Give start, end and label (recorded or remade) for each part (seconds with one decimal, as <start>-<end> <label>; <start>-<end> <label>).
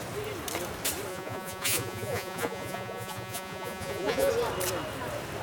0.0-1.1 recorded; 1.1-4.3 remade; 4.3-5.4 recorded